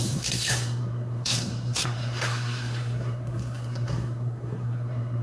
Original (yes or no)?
no